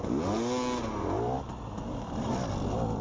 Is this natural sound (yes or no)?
yes